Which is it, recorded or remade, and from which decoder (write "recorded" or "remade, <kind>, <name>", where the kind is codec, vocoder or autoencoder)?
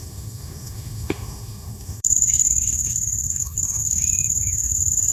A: remade, autoencoder, DAC-VAE